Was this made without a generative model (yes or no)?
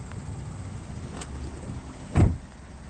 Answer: yes